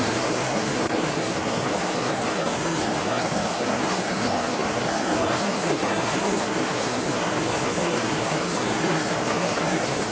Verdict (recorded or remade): remade